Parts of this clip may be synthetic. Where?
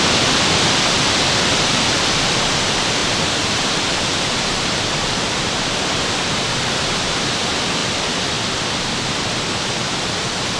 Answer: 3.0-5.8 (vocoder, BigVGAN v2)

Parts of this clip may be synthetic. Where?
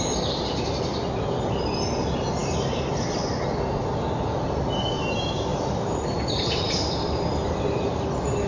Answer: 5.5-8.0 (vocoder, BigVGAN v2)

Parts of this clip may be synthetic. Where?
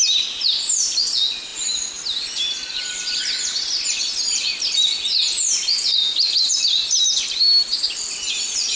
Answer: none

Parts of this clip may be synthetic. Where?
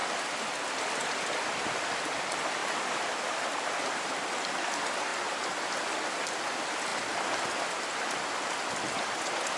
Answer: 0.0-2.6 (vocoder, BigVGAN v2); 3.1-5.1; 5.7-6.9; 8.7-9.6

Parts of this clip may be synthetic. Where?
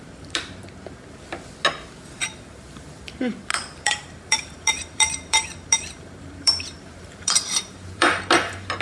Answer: 2.2-3.0 (vocoder, BigVGAN v2); 3.5-8.2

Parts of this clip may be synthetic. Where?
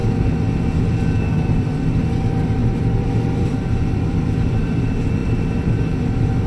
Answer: 0.8-6.5 (vocoder, BigVGAN v2)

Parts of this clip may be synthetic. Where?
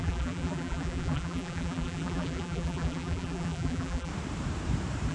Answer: 0.0-4.1 (vocoder, BigVGAN v2)